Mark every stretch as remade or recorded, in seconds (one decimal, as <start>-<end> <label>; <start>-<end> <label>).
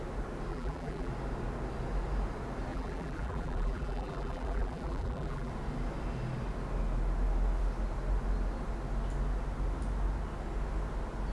0.0-0.5 recorded; 0.5-1.1 remade; 1.1-2.7 recorded; 2.7-5.5 remade; 5.5-11.3 recorded